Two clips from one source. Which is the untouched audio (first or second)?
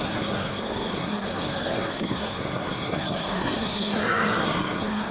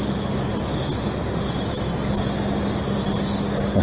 second